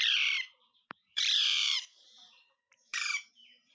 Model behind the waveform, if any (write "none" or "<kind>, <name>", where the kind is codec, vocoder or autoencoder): vocoder, BigVGAN v2